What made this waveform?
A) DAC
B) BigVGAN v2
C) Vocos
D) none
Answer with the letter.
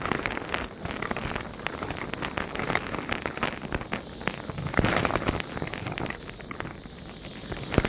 D